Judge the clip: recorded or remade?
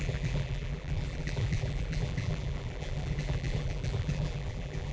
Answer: remade